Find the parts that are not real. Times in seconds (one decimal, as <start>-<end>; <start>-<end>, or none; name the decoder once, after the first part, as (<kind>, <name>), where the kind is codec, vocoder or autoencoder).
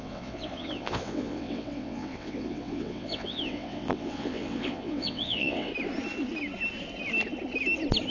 0.0-5.7 (vocoder, WaveNeXt)